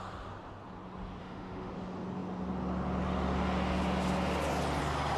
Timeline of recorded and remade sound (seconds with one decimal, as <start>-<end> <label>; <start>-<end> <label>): 0.0-1.2 recorded; 1.2-1.7 remade; 1.7-5.2 recorded